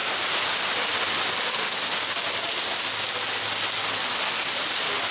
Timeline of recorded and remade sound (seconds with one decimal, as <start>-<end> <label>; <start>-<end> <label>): 0.0-5.1 recorded